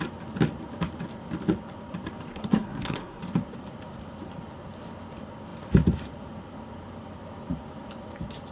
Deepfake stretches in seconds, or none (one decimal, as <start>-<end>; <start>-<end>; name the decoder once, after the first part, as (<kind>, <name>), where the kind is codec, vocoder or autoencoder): 2.3-3.2 (codec, SNAC)